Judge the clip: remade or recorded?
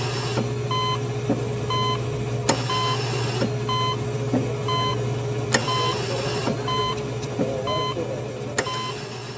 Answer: recorded